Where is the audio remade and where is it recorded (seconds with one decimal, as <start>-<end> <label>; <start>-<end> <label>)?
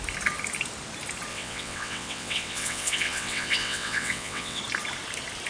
0.0-1.3 recorded; 1.3-4.6 remade; 4.6-5.5 recorded